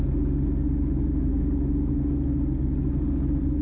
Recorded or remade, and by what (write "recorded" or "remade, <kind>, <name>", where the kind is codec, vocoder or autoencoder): recorded